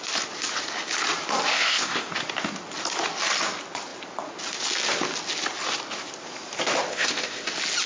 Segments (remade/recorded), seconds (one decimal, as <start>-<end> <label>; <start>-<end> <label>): 0.0-1.5 recorded; 1.5-2.1 remade; 2.1-6.9 recorded; 6.9-7.5 remade; 7.5-7.9 recorded